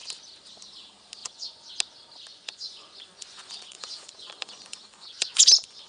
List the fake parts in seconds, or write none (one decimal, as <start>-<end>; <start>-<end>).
1.2-1.7; 2.3-5.9